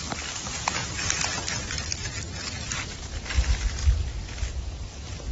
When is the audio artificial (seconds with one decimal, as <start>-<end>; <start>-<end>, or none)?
0.8-2.4; 3.8-5.3